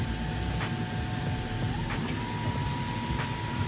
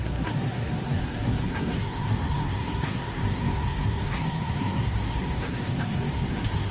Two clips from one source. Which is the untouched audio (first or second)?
first